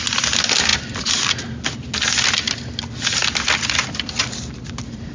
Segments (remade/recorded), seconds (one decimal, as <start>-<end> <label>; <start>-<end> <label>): 0.0-5.1 recorded